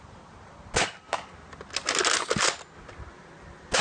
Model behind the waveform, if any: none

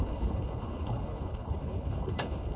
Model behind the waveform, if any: codec, HILCodec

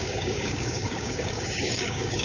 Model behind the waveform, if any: codec, DAC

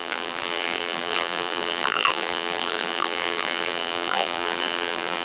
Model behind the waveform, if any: vocoder, BigVGAN v2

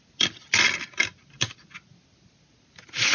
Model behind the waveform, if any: none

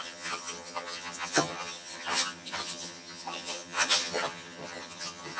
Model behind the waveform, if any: vocoder, HiFi-GAN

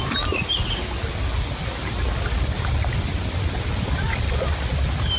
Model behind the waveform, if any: none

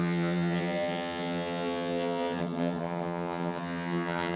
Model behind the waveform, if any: vocoder, HiFi-GAN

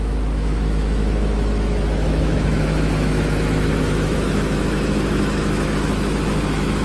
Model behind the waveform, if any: autoencoder, DAC-VAE